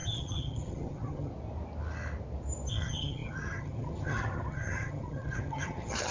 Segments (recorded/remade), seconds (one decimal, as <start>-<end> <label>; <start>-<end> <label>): 0.0-1.3 remade; 1.3-2.7 recorded; 2.7-6.1 remade